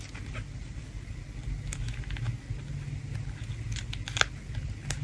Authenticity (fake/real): real